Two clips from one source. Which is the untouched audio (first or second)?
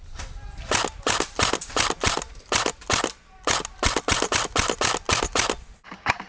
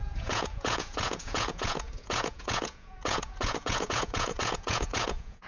first